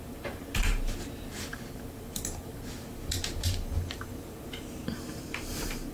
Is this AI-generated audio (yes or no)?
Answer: yes